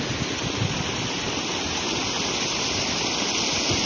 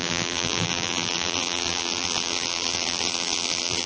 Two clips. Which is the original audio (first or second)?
first